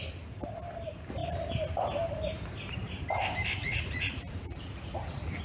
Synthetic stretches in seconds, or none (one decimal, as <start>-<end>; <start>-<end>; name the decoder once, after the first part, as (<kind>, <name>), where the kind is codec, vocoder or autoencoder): 3.6-5.4 (vocoder, Vocos)